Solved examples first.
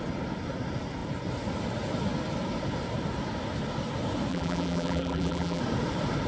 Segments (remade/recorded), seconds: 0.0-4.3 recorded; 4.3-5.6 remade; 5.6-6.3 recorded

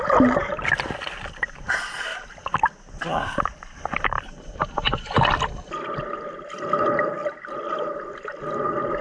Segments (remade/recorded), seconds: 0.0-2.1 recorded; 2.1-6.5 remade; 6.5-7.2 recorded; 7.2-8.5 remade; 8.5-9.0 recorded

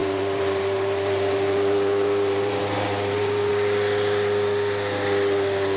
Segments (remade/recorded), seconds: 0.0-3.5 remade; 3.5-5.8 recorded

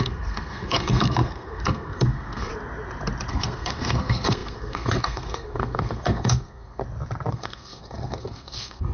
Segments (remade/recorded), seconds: 0.0-2.5 remade; 2.5-3.3 recorded; 3.3-6.8 remade; 6.8-7.3 recorded; 7.3-8.9 remade

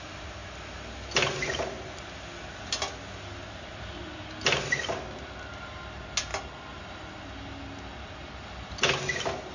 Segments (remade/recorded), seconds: 0.0-9.5 recorded